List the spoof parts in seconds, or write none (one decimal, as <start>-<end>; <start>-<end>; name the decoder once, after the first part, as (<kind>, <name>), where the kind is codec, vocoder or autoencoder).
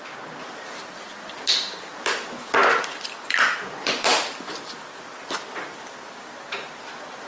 none